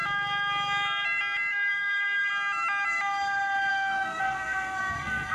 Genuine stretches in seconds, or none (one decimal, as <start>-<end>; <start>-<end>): 0.0-1.5; 2.3-3.7